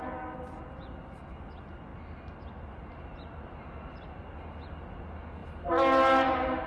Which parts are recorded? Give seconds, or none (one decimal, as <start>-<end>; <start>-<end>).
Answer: 0.0-6.7